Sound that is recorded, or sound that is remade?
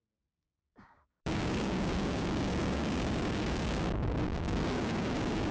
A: remade